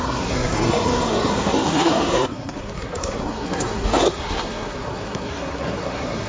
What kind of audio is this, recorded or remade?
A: remade